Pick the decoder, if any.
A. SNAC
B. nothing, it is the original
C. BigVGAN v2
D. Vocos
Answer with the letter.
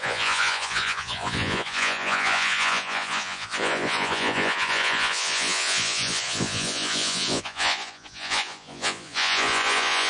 D